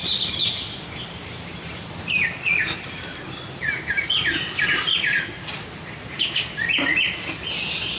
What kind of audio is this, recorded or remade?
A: recorded